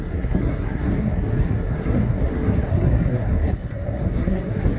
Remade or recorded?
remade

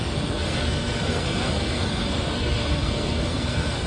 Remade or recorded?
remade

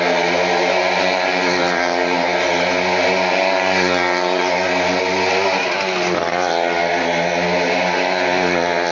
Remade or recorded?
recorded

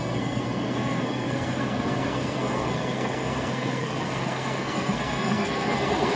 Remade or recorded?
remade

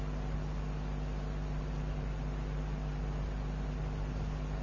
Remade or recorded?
recorded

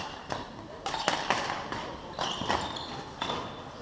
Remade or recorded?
recorded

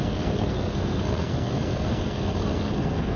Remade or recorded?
remade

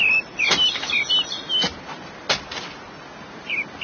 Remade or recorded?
recorded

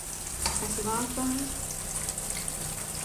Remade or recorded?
recorded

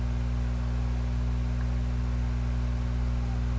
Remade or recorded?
recorded